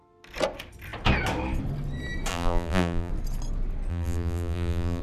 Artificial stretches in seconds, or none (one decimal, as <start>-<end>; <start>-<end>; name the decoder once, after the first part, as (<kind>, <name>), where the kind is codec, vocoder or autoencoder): 2.3-3.1 (vocoder, BigVGAN v2); 3.9-5.0

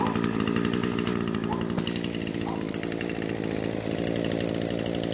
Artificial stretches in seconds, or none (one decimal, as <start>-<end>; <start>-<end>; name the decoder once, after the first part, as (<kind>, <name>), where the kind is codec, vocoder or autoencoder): none

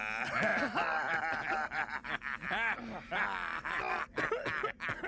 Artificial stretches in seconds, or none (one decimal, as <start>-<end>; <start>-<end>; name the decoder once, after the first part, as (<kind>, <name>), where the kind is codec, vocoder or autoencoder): none

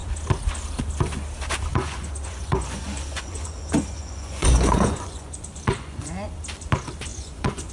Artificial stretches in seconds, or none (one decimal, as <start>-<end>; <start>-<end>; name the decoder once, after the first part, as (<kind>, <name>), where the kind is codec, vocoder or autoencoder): 1.7-6.3 (vocoder, Vocos); 7.1-7.7

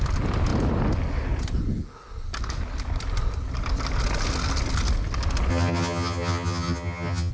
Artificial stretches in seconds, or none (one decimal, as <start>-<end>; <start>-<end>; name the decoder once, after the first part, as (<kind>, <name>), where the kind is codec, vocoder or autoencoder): 5.5-7.3 (vocoder, HiFi-GAN)

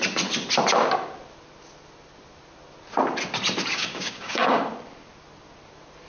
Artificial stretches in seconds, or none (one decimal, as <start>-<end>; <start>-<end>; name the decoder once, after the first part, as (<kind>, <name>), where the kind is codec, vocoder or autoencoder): 3.7-4.6 (codec, DAC)

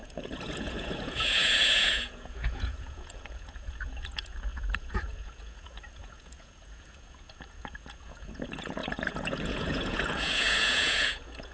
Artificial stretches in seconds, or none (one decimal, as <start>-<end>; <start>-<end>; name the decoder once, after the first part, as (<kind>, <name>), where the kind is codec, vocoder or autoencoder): 0.0-11.5 (vocoder, Vocos)